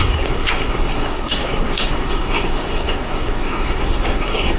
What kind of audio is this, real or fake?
fake